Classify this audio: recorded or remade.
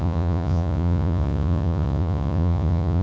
remade